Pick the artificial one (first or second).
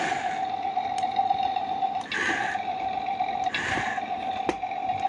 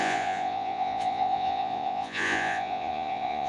second